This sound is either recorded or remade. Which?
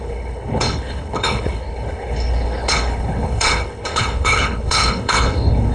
remade